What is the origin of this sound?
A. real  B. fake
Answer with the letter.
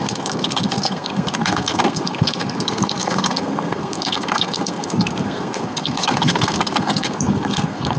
B